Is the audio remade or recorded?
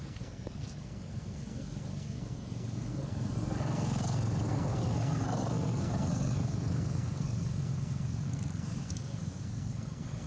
remade